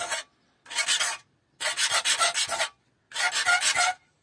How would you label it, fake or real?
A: real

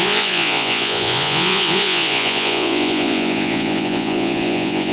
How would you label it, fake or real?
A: fake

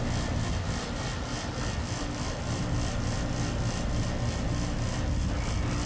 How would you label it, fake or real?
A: real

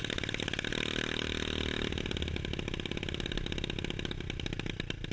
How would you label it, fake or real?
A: real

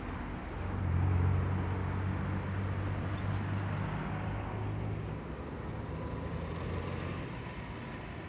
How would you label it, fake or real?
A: real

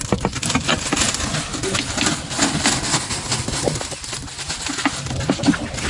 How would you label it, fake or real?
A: real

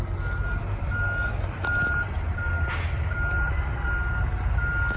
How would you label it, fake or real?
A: real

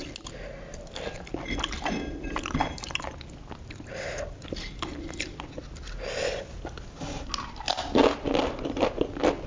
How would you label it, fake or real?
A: real